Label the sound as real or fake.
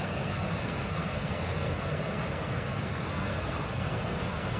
fake